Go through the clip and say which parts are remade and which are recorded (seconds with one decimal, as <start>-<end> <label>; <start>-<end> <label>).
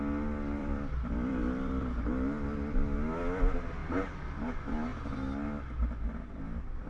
0.0-0.6 recorded; 0.6-2.1 remade; 2.1-6.9 recorded